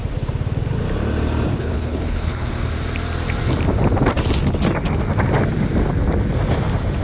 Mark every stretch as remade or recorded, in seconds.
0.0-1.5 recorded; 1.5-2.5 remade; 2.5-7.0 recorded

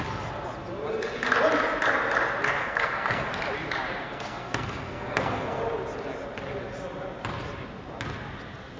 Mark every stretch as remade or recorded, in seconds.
0.0-2.6 recorded; 2.6-3.3 remade; 3.3-4.0 recorded; 4.0-5.6 remade; 5.6-8.8 recorded